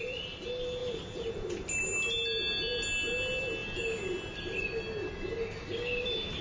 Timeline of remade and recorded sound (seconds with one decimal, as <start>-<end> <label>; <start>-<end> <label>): 0.0-6.4 recorded